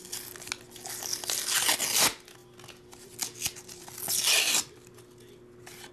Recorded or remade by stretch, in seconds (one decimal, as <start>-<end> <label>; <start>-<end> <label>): 0.0-5.9 recorded